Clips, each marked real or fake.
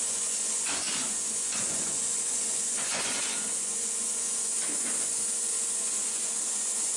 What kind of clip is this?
fake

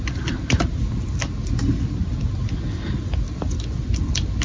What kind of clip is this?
real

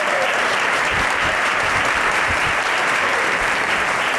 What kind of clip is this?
fake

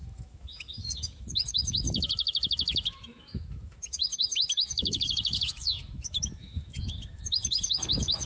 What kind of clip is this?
fake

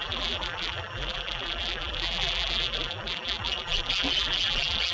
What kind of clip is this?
fake